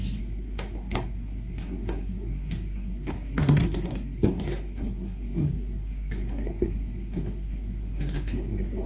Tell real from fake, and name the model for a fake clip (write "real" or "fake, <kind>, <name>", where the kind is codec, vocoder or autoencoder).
fake, codec, SNAC